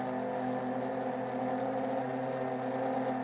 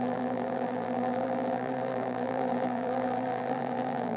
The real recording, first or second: first